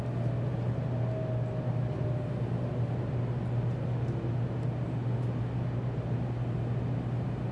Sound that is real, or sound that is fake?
real